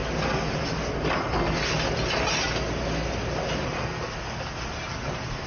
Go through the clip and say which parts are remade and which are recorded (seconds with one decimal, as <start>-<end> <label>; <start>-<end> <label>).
0.0-5.5 recorded